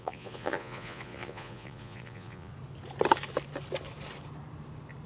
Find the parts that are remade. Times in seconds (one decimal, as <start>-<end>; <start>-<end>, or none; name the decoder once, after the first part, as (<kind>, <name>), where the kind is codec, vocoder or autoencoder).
0.0-2.5 (vocoder, Vocos)